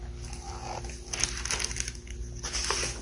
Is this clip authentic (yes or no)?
yes